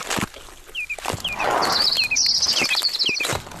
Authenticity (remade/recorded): recorded